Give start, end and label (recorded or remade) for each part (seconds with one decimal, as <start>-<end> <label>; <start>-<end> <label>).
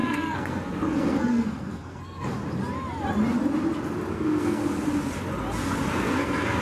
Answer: 0.0-2.3 remade; 2.3-4.1 recorded; 4.1-4.6 remade; 4.6-5.9 recorded; 5.9-6.6 remade